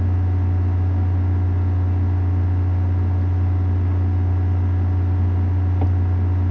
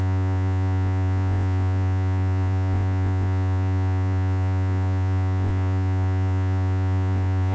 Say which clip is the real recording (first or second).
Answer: first